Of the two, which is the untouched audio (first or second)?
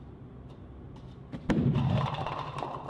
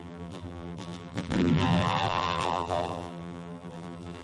first